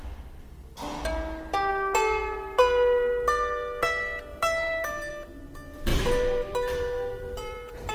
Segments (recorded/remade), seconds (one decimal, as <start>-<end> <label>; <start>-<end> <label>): 0.0-4.3 recorded; 4.3-5.1 remade; 5.1-5.9 recorded; 5.9-7.9 remade